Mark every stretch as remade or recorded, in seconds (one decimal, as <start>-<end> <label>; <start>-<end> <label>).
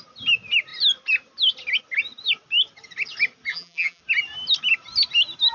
0.0-3.5 recorded; 3.5-4.0 remade; 4.0-5.5 recorded